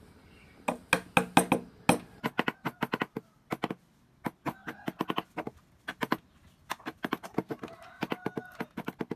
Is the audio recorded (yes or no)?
yes